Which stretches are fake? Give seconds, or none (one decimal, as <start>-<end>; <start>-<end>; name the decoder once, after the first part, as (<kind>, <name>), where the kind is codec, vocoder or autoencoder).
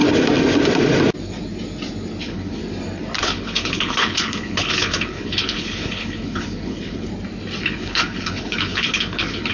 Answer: 2.2-2.6 (codec, HILCodec); 3.2-7.1; 7.6-9.5